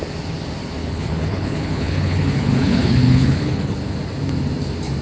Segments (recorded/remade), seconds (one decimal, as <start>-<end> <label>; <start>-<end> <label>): 0.0-0.8 recorded; 0.8-3.8 remade; 3.8-5.0 recorded